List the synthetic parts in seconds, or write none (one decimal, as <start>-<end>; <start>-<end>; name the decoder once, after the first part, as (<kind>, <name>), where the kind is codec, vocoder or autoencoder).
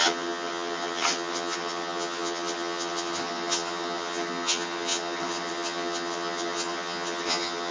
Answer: 0.0-7.7 (vocoder, HiFi-GAN)